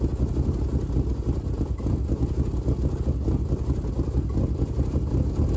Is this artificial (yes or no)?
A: no